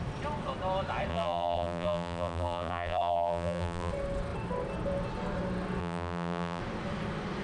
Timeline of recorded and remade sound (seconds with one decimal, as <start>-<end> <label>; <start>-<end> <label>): 0.0-1.1 recorded; 1.1-3.9 remade; 3.9-5.8 recorded; 5.8-6.6 remade; 6.6-7.4 recorded